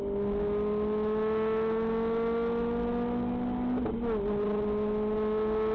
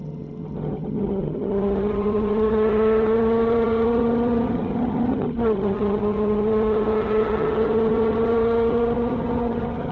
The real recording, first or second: first